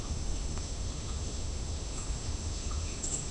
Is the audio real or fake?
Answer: fake